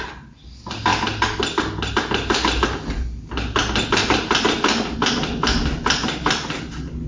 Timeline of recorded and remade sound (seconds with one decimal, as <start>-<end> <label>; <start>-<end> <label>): 0.0-7.1 recorded